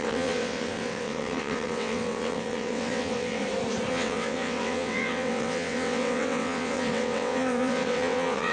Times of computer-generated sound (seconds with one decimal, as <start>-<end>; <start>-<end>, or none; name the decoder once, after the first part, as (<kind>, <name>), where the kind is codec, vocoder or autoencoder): 0.0-3.4 (vocoder, WaveNeXt); 3.9-8.5